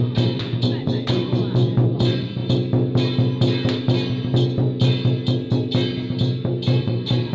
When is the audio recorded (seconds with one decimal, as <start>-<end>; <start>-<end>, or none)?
2.4-6.8